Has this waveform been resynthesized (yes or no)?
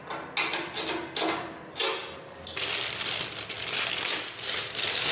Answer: no